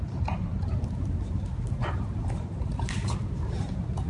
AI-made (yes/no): yes